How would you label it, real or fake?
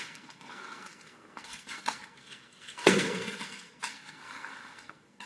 fake